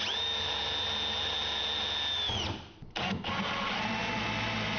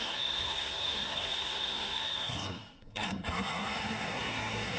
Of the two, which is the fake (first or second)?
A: second